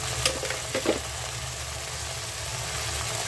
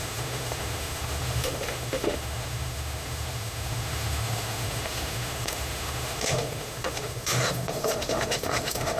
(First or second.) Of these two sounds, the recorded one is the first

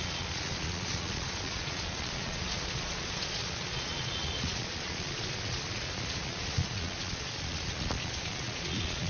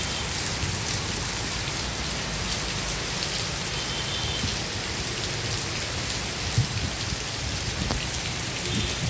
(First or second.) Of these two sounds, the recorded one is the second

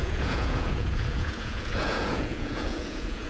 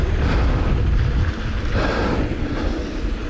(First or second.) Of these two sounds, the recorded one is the second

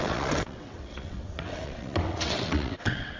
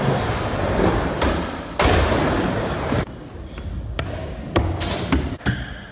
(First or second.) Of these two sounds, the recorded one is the second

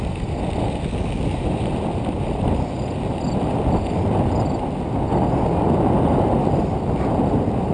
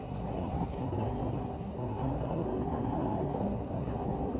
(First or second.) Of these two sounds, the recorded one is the first